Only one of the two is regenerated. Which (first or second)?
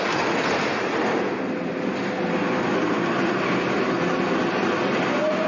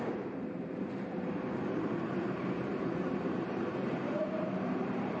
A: second